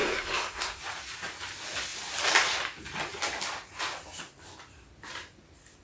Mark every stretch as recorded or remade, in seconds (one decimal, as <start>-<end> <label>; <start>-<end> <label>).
0.0-0.8 remade; 0.8-5.8 recorded